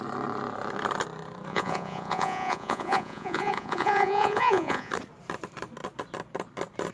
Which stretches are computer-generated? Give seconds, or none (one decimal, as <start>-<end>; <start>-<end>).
1.5-4.9